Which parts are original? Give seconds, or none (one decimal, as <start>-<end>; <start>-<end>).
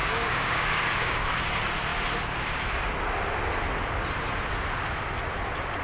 1.4-5.8